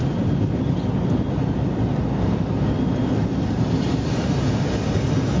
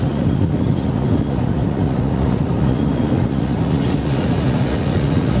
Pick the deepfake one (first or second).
second